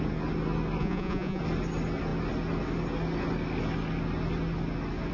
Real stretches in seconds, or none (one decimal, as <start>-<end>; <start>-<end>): 0.0-0.8; 1.4-5.1